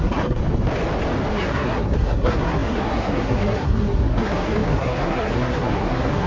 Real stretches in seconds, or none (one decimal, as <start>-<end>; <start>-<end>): 0.4-1.3